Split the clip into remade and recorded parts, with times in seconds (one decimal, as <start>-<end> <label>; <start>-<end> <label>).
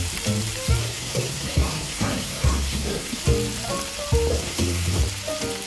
0.0-0.8 recorded; 0.8-3.2 remade; 3.2-4.3 recorded; 4.3-5.0 remade; 5.0-5.7 recorded